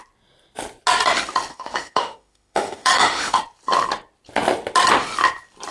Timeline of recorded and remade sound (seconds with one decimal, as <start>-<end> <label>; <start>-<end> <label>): 0.0-1.5 recorded; 1.5-3.4 remade; 3.4-5.7 recorded